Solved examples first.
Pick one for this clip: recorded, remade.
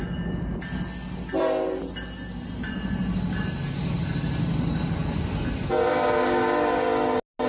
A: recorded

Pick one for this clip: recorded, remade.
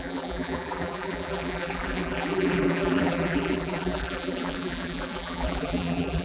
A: remade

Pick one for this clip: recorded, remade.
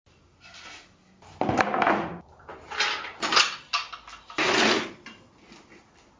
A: recorded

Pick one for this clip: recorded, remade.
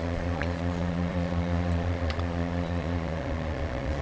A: remade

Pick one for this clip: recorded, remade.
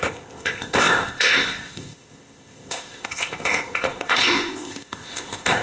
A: remade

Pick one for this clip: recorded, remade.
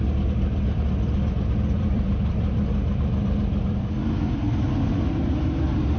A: remade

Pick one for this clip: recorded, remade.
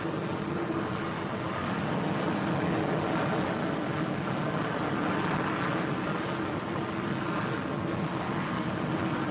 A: recorded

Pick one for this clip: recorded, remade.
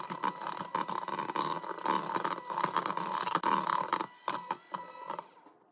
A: recorded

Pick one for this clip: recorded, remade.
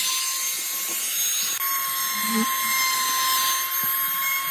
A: recorded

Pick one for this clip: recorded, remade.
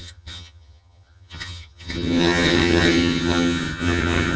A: remade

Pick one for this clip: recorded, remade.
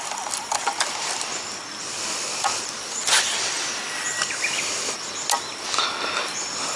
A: recorded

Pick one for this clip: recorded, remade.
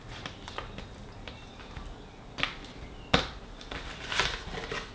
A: recorded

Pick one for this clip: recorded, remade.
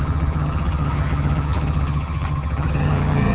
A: remade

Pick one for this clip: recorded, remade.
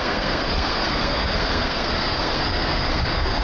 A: remade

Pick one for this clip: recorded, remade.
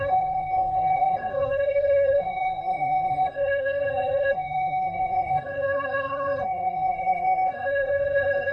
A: remade